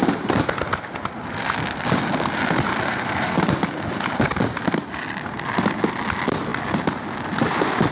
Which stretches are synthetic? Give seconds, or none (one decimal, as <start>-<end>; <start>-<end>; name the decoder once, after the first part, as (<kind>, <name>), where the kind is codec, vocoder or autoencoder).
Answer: 2.7-3.4 (codec, SNAC)